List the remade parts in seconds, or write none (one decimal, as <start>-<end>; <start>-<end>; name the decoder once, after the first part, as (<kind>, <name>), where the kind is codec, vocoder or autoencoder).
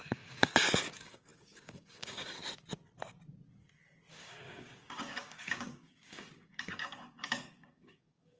0.0-2.4 (codec, DAC); 4.1-8.4